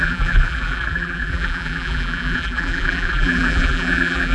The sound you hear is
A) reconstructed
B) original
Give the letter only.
A